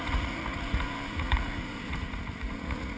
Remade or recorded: remade